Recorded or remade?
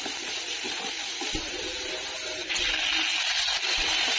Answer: recorded